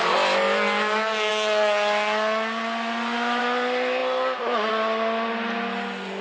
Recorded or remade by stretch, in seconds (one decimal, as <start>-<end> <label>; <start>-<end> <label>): 0.0-6.2 recorded